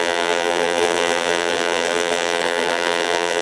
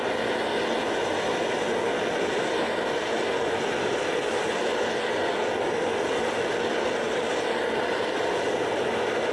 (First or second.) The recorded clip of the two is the second